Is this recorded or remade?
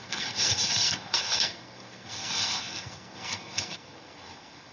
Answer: remade